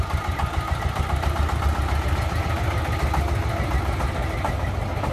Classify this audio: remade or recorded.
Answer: recorded